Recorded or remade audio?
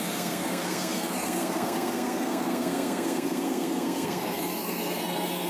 remade